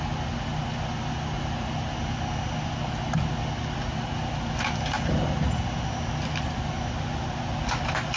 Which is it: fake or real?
real